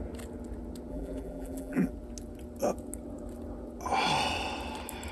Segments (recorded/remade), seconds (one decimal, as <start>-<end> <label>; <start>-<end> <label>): 0.0-0.9 recorded; 0.9-1.9 remade; 1.9-5.1 recorded